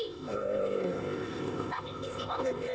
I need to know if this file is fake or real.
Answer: fake